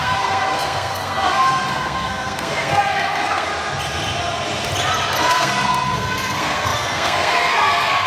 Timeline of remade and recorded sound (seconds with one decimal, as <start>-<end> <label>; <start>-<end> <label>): 0.0-3.5 remade; 3.5-5.3 recorded; 5.3-8.1 remade